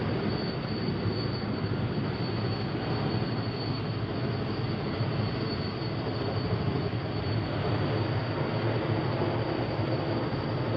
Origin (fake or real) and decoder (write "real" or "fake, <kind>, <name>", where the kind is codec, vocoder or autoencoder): real